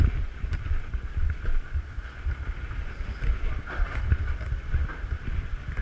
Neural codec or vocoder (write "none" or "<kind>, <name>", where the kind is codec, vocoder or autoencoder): none